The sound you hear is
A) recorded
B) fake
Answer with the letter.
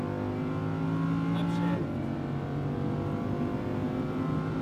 A